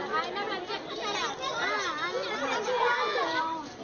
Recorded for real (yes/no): yes